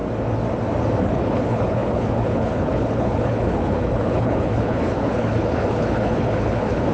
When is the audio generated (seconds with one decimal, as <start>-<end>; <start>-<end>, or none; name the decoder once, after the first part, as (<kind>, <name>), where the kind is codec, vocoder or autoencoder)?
1.0-6.9 (codec, HILCodec)